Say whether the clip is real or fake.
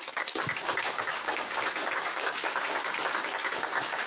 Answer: fake